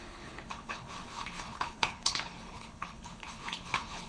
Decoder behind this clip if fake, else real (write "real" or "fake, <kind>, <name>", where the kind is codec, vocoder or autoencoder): fake, codec, HILCodec